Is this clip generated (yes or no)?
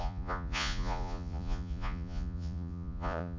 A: yes